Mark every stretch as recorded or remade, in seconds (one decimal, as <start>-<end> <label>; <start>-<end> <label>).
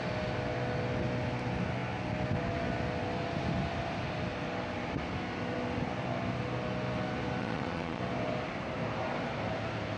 0.0-7.4 recorded; 7.4-8.0 remade; 8.0-10.0 recorded